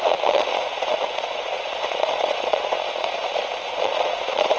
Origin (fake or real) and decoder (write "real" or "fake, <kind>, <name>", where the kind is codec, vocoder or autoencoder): fake, vocoder, Vocos